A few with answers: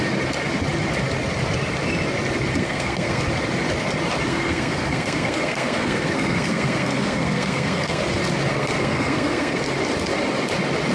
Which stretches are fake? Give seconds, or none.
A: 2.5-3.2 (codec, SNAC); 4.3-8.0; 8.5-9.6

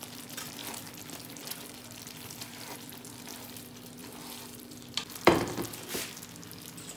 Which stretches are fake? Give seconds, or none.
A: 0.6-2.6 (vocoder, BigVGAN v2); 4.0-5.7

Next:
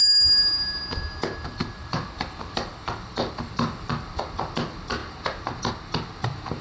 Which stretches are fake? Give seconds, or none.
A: none